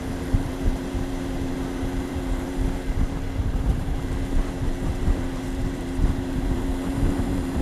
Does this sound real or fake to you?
fake